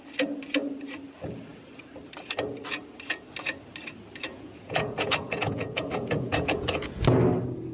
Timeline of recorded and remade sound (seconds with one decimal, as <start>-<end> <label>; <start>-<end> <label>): 0.0-4.3 recorded; 4.3-7.0 remade; 7.0-7.7 recorded